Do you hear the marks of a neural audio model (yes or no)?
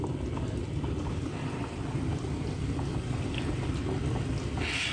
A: no